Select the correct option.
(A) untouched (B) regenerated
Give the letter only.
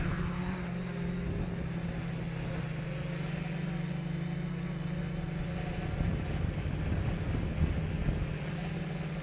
A